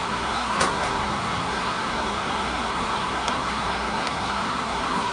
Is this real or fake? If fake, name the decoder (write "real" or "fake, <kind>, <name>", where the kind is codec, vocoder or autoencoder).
fake, codec, SNAC